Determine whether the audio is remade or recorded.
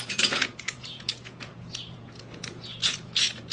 remade